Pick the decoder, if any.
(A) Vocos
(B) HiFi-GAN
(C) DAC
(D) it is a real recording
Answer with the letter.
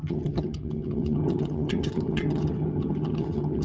B